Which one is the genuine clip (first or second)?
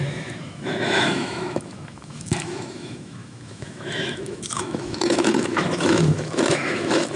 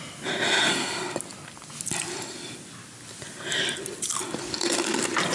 second